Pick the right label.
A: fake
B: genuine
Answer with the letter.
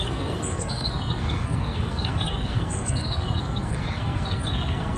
A